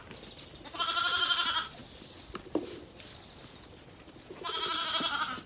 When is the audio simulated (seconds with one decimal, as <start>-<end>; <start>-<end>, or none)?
none